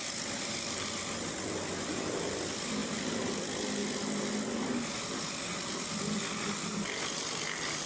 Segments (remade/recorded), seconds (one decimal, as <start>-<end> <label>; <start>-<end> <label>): 0.0-7.9 recorded